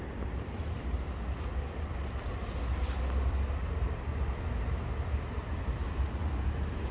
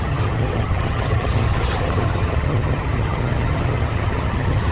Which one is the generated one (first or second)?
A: second